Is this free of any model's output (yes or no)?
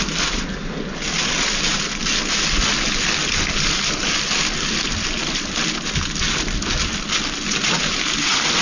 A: yes